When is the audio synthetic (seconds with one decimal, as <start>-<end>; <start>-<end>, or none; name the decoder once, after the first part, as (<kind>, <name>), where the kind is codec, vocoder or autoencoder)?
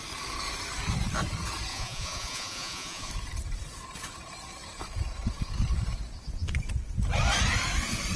1.7-3.1 (vocoder, Vocos)